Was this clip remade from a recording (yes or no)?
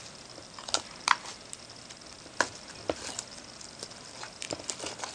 no